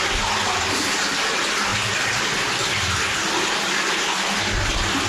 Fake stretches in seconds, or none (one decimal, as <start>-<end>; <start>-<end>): none